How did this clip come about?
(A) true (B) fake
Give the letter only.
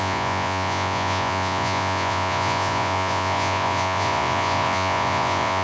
B